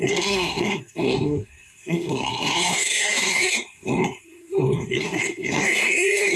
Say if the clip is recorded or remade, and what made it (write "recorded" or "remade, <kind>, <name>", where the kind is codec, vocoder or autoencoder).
remade, codec, SNAC